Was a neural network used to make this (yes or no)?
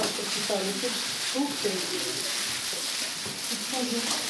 no